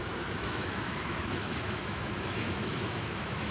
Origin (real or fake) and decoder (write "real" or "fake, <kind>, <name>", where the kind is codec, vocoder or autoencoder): fake, autoencoder, DAC-VAE